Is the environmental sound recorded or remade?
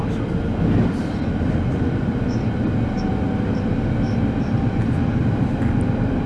recorded